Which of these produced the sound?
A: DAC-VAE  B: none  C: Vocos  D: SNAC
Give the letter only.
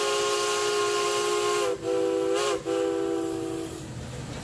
B